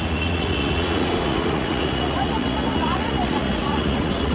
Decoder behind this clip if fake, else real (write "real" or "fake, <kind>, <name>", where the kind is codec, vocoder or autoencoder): fake, vocoder, Vocos